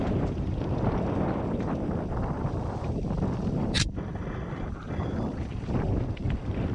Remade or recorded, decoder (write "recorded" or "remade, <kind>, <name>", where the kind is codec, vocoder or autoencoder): remade, vocoder, BigVGAN v2